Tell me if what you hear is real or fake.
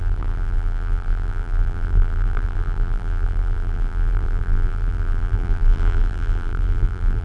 fake